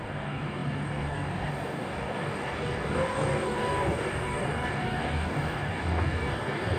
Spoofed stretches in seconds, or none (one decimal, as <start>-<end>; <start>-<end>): 0.0-6.8